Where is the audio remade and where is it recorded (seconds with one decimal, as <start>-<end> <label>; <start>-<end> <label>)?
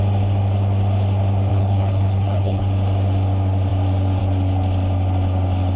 0.0-1.5 recorded; 1.5-2.6 remade; 2.6-5.8 recorded